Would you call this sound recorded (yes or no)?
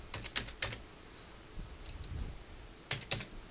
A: yes